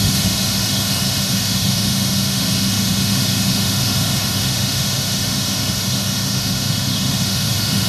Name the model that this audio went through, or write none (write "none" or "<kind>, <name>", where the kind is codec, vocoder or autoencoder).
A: autoencoder, DAC-VAE